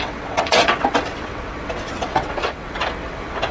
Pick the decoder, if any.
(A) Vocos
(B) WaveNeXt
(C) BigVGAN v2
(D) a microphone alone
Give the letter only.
B